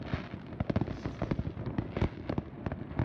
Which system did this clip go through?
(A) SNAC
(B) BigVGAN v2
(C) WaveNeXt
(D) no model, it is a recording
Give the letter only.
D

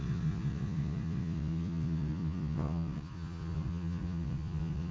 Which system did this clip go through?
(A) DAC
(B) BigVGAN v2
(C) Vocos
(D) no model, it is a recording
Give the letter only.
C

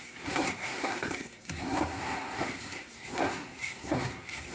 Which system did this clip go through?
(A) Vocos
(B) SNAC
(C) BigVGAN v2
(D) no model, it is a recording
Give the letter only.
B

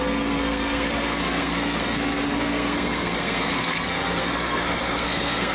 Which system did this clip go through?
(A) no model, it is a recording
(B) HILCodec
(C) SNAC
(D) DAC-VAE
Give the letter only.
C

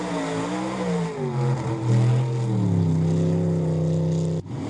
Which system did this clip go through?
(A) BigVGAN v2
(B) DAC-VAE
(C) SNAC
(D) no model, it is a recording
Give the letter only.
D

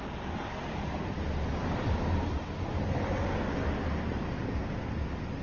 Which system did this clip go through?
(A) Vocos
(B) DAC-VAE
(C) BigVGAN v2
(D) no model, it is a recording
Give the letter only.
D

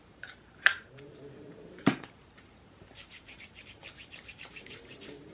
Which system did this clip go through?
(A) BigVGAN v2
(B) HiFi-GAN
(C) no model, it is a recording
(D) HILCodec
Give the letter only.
A